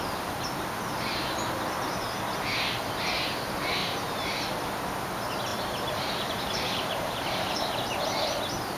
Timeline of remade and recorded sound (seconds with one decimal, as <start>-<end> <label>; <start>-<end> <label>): 0.0-3.8 recorded; 3.8-4.8 remade; 4.8-5.5 recorded; 5.5-8.0 remade; 8.0-8.8 recorded